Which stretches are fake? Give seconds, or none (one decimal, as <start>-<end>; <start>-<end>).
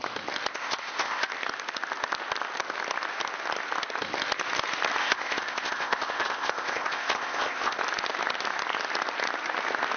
0.5-1.3; 5.0-7.8